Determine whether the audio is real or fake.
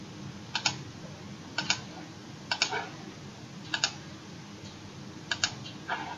real